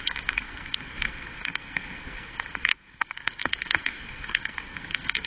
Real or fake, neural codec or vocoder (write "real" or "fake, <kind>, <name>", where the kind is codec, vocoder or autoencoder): fake, codec, SNAC